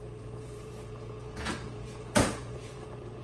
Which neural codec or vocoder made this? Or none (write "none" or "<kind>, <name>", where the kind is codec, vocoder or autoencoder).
vocoder, Vocos